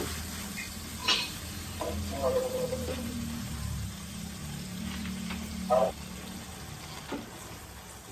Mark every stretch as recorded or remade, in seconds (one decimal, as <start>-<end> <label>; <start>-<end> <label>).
0.0-1.0 recorded; 1.0-5.9 remade; 5.9-8.1 recorded